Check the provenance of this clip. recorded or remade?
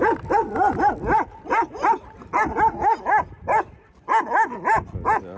recorded